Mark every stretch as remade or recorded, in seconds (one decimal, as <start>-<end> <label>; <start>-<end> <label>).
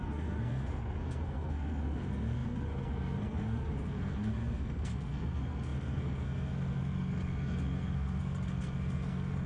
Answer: 0.0-9.5 remade